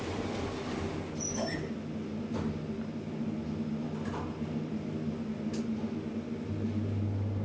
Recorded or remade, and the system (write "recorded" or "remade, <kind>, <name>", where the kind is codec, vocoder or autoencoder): recorded